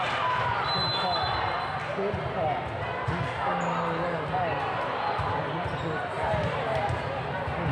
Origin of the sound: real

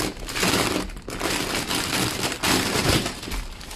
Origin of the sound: real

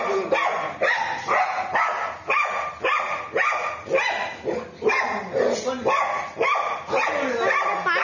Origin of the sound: real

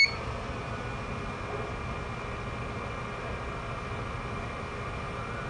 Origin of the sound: real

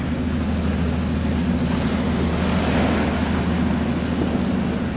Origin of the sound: real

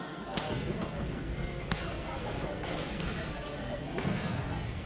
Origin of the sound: fake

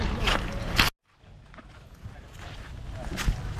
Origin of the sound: real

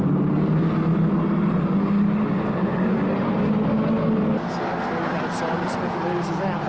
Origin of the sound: real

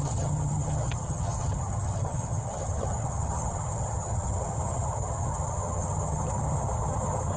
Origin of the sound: fake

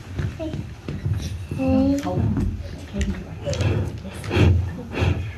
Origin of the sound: real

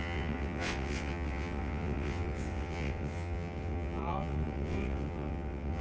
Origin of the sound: fake